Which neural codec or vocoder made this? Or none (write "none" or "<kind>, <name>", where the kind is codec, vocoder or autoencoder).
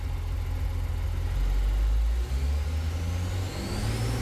none